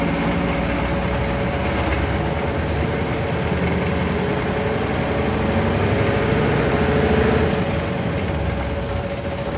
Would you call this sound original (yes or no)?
yes